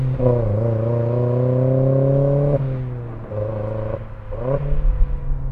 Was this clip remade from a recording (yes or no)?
no